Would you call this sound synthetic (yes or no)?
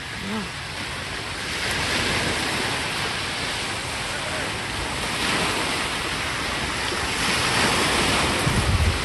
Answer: no